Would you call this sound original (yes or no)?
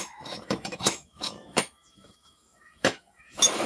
no